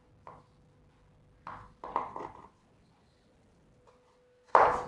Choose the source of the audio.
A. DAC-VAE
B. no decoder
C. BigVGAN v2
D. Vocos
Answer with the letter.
B